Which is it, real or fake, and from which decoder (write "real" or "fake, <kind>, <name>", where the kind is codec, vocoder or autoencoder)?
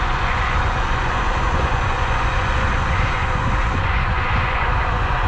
fake, vocoder, Vocos